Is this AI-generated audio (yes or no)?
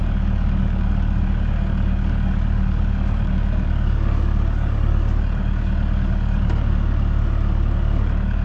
yes